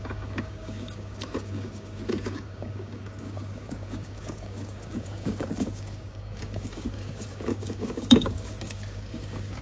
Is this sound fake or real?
fake